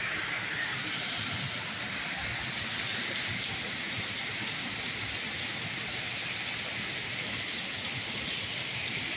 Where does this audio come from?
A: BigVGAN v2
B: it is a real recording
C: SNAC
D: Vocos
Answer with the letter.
B